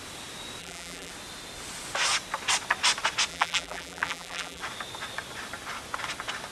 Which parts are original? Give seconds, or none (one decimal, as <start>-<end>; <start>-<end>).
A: 0.0-0.6; 1.1-3.3; 4.6-6.5